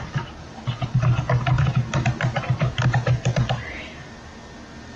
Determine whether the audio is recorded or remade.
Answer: recorded